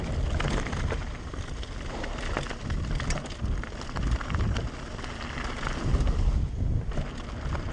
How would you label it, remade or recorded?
recorded